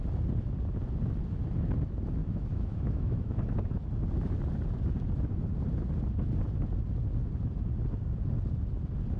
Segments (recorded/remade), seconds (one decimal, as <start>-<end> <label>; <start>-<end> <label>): 0.0-2.2 recorded; 2.2-3.9 remade; 3.9-9.2 recorded

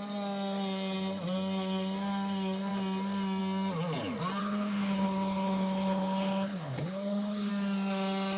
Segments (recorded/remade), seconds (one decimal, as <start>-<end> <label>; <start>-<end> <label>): 0.0-4.4 recorded; 4.4-7.5 remade; 7.5-8.4 recorded

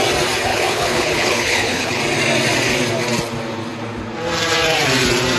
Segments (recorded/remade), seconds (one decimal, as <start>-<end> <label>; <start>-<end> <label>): 0.0-0.5 recorded; 0.5-2.0 remade; 2.0-5.4 recorded

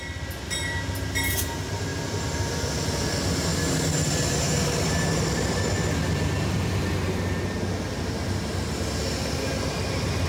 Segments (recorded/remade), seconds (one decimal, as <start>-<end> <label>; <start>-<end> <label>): 0.0-10.3 recorded